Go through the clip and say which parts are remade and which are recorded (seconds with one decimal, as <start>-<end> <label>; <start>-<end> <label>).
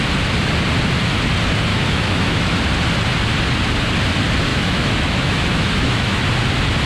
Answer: 0.0-1.7 recorded; 1.7-2.5 remade; 2.5-4.5 recorded; 4.5-6.2 remade; 6.2-6.9 recorded